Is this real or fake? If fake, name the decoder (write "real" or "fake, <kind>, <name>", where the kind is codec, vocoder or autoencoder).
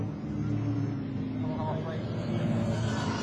real